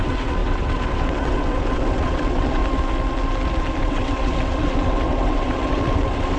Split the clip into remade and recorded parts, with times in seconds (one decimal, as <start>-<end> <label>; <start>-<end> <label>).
0.0-2.6 remade; 2.6-3.8 recorded; 3.8-6.4 remade